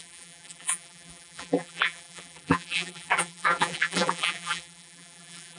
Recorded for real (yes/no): no